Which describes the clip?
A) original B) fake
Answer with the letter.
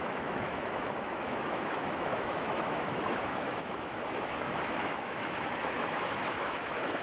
B